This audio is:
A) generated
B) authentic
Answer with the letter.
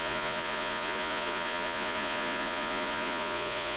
A